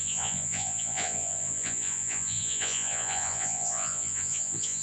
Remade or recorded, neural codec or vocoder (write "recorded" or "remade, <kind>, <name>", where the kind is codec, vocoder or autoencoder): remade, vocoder, Vocos